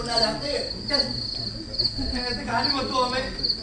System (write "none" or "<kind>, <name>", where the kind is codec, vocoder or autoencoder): none